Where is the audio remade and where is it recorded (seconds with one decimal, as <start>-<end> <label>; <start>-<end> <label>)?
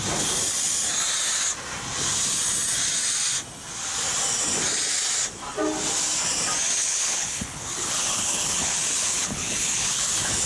0.0-6.8 recorded; 6.8-10.5 remade